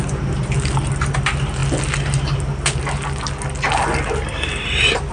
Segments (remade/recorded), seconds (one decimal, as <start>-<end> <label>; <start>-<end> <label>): 0.0-5.1 recorded